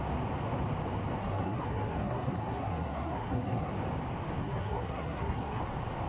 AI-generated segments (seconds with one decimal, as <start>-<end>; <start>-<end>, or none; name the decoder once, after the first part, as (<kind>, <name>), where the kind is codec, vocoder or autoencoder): 1.2-3.7 (codec, SNAC); 4.4-5.6